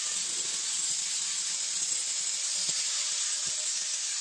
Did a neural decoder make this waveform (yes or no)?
no